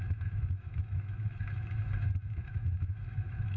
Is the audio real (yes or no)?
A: no